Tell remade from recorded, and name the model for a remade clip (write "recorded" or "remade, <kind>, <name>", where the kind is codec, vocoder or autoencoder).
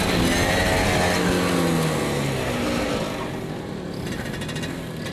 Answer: recorded